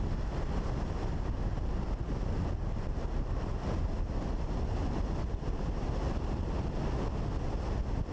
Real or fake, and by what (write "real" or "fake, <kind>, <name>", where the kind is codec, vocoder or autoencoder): real